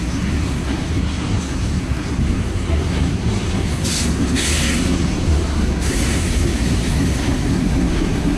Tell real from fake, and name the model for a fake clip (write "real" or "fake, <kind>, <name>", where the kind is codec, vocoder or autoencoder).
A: fake, codec, SNAC